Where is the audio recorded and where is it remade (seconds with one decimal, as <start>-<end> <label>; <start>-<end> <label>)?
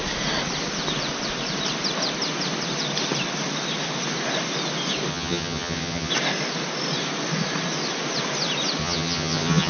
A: 0.0-5.1 recorded; 5.1-6.1 remade; 6.1-8.8 recorded; 8.8-9.7 remade